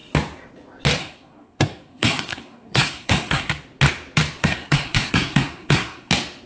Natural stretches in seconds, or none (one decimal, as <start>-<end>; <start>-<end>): 0.0-1.0; 3.5-4.4; 6.1-6.5